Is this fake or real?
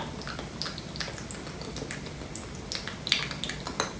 real